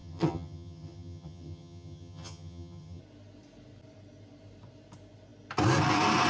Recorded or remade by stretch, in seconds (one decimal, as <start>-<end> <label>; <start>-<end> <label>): 0.0-3.0 remade; 3.0-6.3 recorded